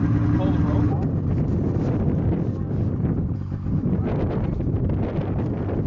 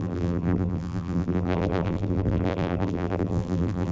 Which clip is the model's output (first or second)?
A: second